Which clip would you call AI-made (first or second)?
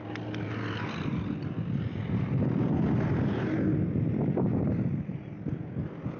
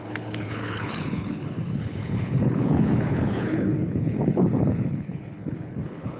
second